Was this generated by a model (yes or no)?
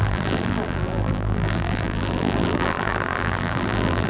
yes